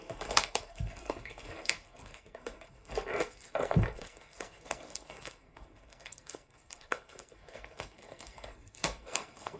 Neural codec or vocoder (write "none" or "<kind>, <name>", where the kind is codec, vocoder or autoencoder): codec, SNAC